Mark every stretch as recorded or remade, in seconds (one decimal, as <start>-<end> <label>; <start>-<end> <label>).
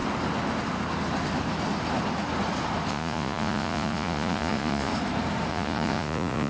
0.0-2.9 recorded; 2.9-4.9 remade; 4.9-5.5 recorded; 5.5-6.5 remade